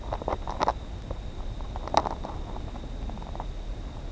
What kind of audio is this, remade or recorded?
recorded